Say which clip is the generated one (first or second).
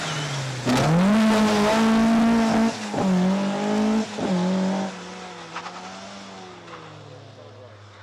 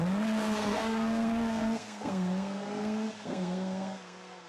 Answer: second